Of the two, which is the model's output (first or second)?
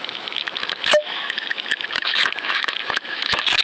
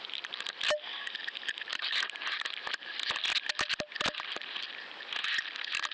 first